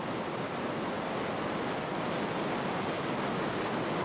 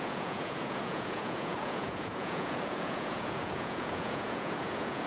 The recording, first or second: first